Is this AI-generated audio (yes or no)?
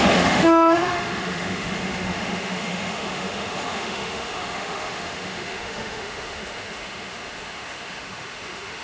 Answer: yes